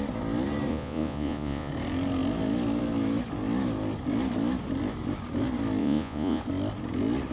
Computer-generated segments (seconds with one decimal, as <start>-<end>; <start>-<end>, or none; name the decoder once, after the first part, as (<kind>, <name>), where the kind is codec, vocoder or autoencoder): 0.7-1.7 (vocoder, Vocos); 5.8-6.4